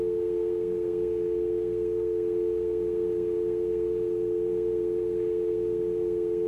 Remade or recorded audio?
remade